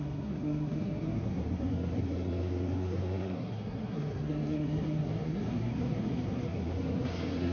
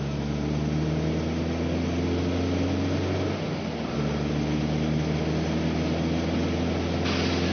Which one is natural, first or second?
second